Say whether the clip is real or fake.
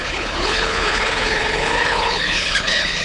fake